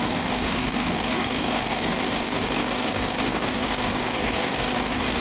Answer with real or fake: fake